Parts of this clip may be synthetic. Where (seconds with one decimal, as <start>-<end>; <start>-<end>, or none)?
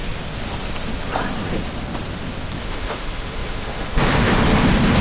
2.6-5.0